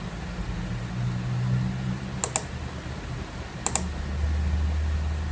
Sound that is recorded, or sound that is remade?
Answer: recorded